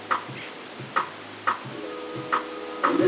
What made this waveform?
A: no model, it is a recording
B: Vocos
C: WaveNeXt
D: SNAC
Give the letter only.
A